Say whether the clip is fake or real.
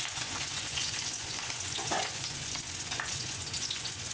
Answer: fake